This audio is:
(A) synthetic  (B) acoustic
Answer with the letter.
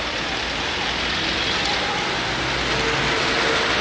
B